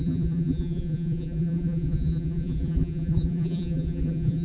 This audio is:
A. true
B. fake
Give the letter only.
B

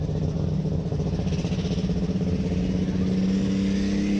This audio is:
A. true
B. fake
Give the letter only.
A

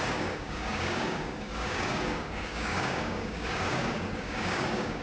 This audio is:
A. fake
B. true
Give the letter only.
A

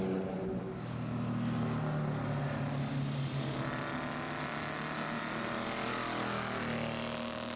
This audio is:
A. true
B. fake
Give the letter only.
A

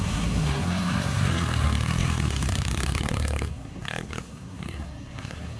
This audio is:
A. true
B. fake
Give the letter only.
B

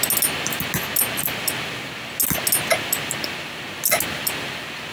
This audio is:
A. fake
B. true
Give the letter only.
B